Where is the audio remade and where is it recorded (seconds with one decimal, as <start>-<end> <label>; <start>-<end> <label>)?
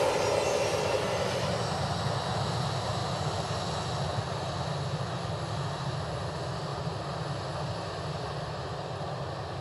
0.0-9.6 recorded